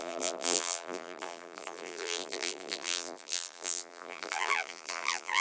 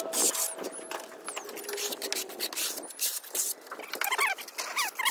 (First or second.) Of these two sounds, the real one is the second